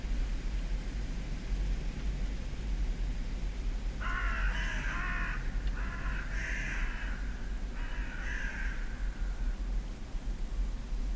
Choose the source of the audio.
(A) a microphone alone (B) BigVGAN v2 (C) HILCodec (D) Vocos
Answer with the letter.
A